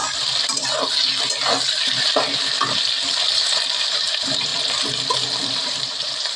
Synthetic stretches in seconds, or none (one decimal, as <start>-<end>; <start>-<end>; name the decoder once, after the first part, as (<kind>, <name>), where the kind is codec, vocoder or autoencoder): 3.8-4.5 (vocoder, BigVGAN v2); 5.4-6.4

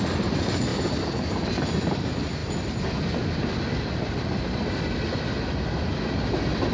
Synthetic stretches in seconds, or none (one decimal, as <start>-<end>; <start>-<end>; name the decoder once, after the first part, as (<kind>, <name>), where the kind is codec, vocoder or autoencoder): none

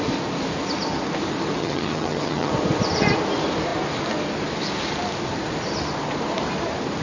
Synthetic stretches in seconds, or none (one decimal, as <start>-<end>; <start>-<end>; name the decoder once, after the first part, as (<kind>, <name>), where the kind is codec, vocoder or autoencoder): 1.6-2.5 (vocoder, HiFi-GAN)

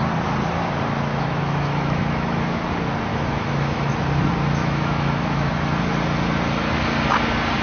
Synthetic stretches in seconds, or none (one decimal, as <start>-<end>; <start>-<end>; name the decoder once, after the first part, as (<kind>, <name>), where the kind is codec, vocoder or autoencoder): 1.1-2.6 (autoencoder, DAC-VAE); 3.1-3.9; 4.6-5.5

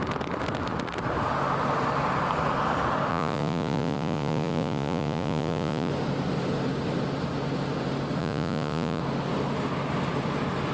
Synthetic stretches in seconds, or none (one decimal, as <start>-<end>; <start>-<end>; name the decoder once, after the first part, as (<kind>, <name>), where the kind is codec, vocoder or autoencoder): 3.1-5.9 (vocoder, Vocos); 8.2-9.0

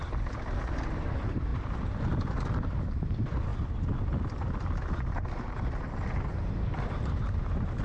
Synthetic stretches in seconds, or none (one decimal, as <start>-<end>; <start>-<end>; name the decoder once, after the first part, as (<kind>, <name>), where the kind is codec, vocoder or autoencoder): 6.3-7.3 (vocoder, BigVGAN v2)